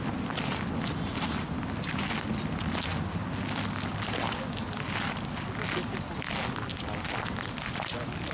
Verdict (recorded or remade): recorded